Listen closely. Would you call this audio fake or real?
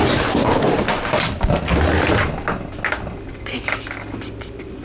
real